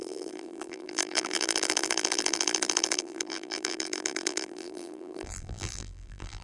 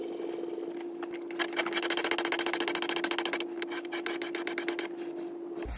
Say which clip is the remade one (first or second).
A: first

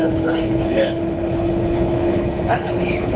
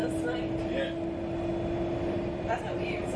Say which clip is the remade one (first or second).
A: first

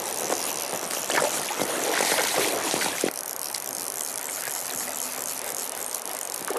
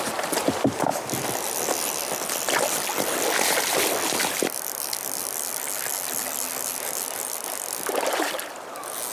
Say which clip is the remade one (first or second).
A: first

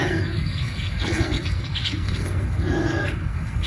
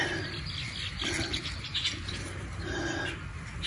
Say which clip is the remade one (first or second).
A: first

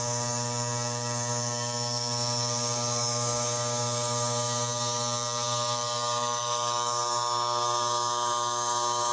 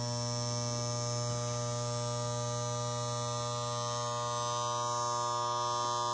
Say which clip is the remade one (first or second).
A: first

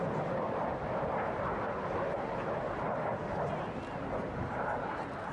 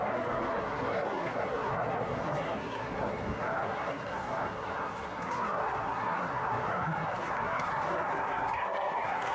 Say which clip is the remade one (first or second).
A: second